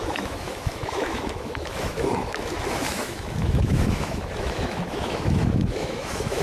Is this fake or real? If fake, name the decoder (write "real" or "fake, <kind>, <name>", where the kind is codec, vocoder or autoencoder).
fake, autoencoder, DAC-VAE